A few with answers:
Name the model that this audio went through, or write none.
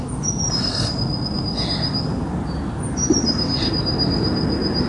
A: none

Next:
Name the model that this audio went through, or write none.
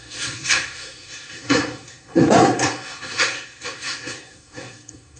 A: codec, SNAC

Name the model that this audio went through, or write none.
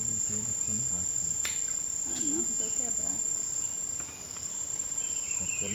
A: none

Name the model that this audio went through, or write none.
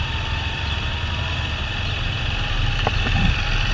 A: none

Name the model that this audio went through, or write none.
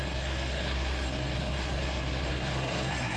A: codec, SNAC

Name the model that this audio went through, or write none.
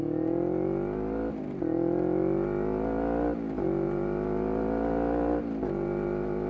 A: none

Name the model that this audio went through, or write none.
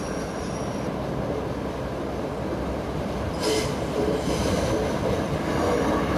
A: none